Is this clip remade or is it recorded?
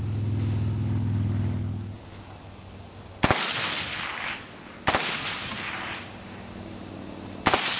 recorded